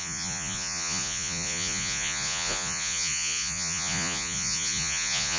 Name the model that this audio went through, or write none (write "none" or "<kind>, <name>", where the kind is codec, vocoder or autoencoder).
vocoder, Vocos